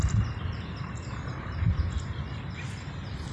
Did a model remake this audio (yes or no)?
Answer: no